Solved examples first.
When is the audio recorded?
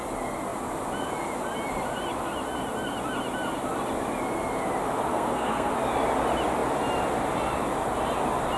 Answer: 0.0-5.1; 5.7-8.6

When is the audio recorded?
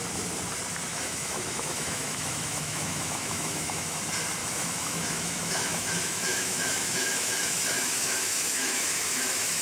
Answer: 0.0-0.9; 4.0-4.4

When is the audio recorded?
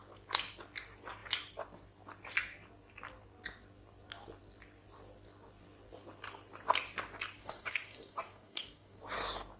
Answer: 0.0-7.4; 9.0-9.6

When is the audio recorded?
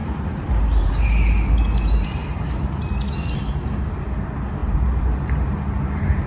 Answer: 0.9-2.2; 3.3-4.6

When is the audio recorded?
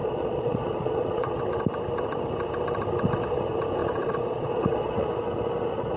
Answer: 1.4-3.8; 5.1-6.0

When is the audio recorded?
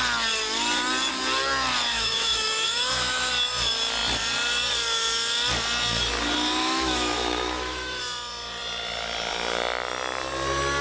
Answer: 0.0-1.9; 3.3-6.6; 8.0-10.8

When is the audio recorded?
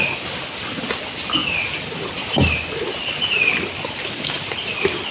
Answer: 0.0-1.4; 4.5-5.1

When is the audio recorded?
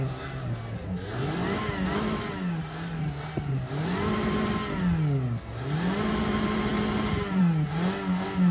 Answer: 0.0-8.5